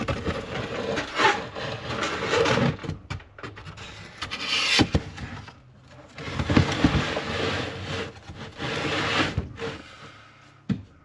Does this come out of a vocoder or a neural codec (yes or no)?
no